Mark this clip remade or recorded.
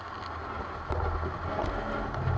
recorded